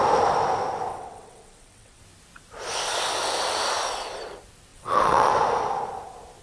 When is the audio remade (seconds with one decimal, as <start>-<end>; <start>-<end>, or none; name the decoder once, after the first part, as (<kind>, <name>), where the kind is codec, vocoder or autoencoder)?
0.9-2.0 (vocoder, WaveNeXt); 4.7-5.3